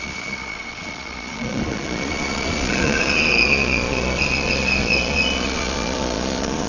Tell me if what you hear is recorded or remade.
remade